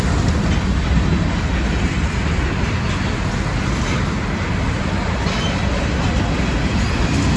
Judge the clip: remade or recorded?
recorded